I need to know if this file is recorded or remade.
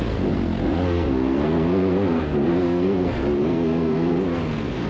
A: remade